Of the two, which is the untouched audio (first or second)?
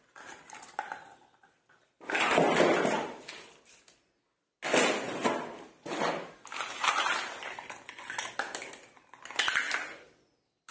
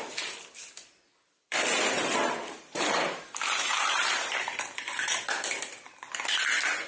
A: first